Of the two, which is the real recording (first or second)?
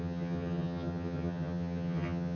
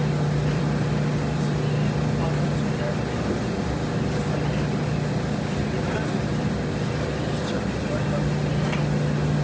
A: second